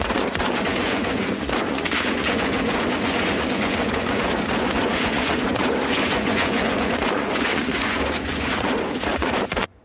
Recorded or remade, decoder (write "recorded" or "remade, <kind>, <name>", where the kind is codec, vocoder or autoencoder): remade, vocoder, Vocos